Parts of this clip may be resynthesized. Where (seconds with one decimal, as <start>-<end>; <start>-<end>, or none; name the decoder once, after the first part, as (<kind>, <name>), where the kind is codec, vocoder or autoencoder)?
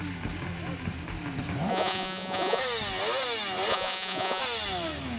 1.7-2.6 (vocoder, Vocos); 3.7-4.4